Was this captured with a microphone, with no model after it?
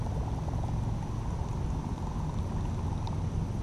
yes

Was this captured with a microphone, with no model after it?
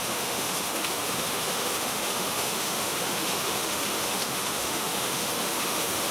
no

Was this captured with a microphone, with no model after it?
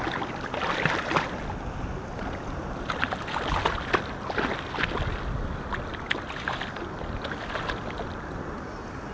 yes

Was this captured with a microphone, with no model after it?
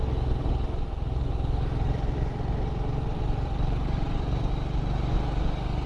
yes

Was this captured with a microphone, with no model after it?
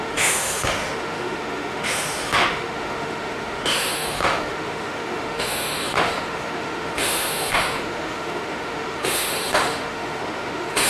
no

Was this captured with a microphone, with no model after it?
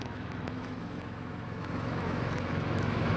no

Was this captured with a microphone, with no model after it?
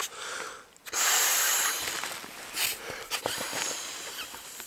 yes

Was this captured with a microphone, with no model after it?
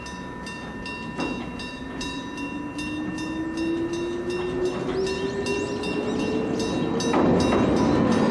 yes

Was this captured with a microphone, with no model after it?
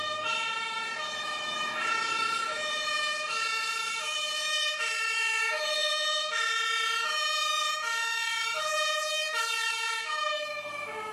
no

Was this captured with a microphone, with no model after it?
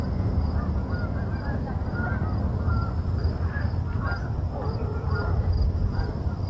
yes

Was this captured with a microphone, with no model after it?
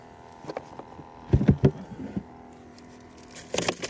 yes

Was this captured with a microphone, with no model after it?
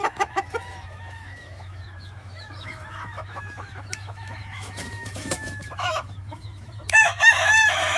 no